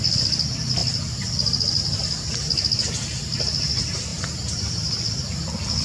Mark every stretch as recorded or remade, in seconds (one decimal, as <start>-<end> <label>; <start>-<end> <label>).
0.0-4.1 recorded; 4.1-5.0 remade; 5.0-5.8 recorded